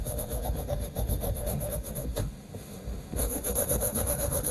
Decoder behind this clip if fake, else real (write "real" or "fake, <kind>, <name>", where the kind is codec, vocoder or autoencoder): fake, autoencoder, DAC-VAE